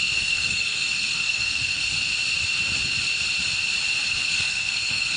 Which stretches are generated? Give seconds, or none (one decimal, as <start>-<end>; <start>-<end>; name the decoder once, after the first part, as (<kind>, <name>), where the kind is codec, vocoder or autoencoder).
0.0-1.8 (codec, SNAC); 4.2-5.2

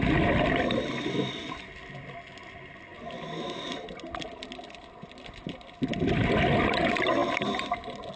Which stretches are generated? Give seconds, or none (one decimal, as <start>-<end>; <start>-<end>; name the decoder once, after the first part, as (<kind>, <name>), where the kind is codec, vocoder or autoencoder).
none

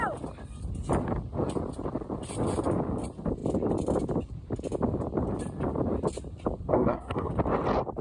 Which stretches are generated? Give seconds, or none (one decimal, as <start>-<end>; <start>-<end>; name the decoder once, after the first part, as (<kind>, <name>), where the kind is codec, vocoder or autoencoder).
6.7-7.3 (codec, SNAC)

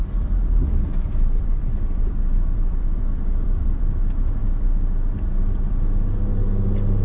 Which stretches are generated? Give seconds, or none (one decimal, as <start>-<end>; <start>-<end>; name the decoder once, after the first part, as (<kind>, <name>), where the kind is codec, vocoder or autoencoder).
0.0-3.9 (vocoder, BigVGAN v2)

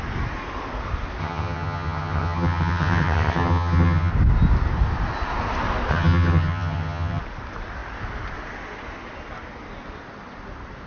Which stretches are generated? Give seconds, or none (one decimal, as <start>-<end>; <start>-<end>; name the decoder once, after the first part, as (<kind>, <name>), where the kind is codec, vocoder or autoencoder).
1.2-4.1 (vocoder, HiFi-GAN); 5.9-7.2

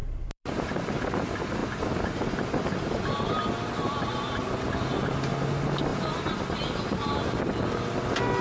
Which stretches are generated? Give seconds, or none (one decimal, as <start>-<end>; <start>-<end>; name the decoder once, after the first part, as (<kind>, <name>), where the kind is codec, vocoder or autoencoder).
0.0-0.6 (vocoder, BigVGAN v2)

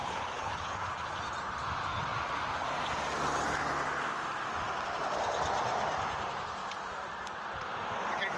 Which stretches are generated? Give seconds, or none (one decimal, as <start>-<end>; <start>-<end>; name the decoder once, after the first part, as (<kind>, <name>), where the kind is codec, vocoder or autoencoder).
0.0-1.1 (codec, HILCodec)